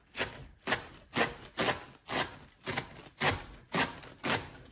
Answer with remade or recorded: recorded